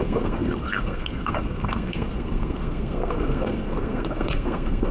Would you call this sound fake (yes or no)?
yes